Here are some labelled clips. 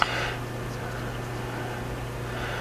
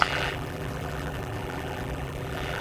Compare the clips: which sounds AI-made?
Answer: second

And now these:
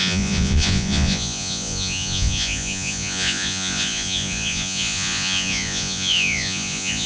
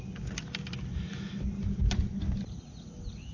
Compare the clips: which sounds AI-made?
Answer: first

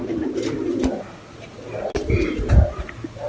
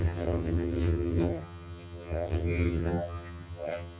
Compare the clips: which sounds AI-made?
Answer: second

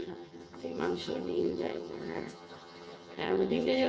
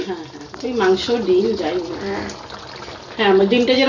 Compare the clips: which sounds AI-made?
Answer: first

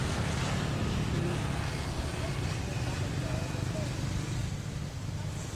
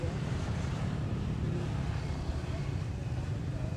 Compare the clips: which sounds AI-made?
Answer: second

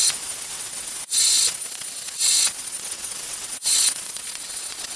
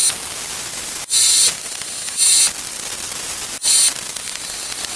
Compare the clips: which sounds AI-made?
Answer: first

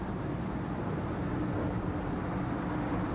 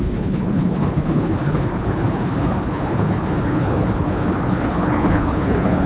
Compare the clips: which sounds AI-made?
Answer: second